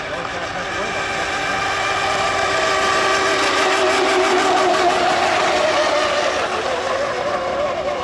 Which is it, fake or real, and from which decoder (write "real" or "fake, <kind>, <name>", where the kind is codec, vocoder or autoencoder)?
real